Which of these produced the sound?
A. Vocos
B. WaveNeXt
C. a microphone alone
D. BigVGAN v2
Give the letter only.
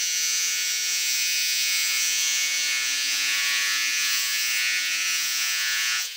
A